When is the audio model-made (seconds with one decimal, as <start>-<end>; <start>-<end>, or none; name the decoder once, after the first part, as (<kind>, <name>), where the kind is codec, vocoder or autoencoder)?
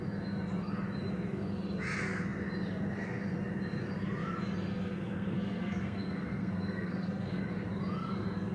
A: 4.7-7.4 (codec, SNAC)